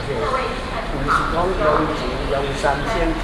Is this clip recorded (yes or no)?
yes